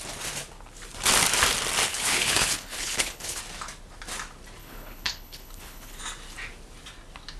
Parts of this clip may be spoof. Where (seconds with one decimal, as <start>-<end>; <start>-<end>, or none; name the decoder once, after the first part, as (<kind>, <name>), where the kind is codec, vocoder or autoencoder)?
1.9-3.4 (codec, HILCodec); 4.6-6.0